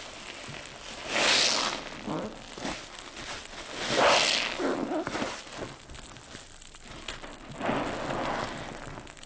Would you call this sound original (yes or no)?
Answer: yes